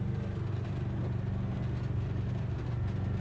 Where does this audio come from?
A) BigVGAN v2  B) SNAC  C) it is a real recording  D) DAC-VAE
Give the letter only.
C